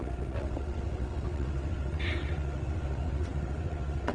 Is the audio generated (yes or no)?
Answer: yes